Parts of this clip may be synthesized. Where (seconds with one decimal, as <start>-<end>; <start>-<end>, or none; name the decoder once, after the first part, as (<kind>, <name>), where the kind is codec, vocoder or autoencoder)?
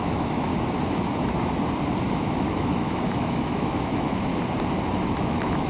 0.0-0.5 (autoencoder, DAC-VAE); 2.1-4.3; 5.2-5.7